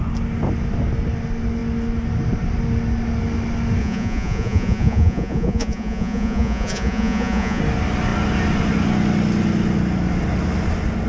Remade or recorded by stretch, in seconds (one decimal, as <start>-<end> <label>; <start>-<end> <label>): 0.0-3.8 recorded; 3.8-7.6 remade; 7.6-11.1 recorded